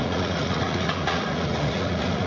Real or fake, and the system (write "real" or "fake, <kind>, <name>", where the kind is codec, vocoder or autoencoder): fake, vocoder, Vocos